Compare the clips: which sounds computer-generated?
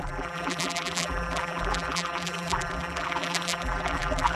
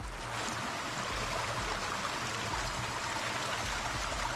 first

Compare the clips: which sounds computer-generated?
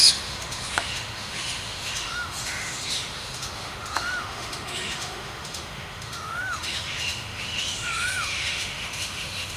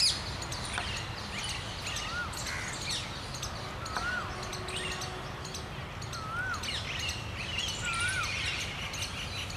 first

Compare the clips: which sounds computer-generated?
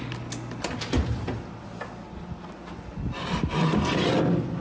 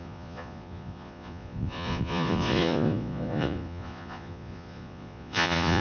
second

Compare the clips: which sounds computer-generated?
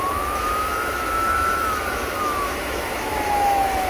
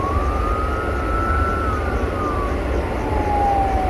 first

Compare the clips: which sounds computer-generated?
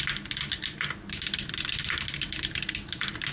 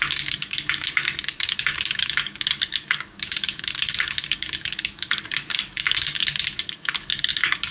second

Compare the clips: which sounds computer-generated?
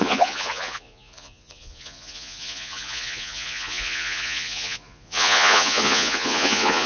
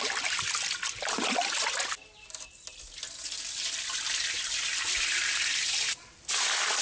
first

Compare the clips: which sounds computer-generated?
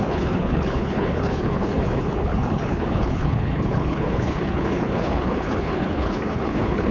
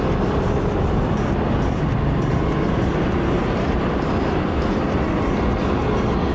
first